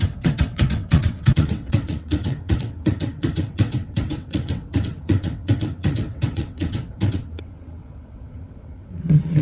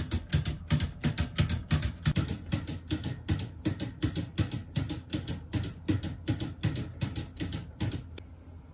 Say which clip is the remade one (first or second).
first